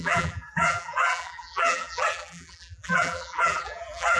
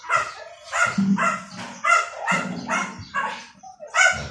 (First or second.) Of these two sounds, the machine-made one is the first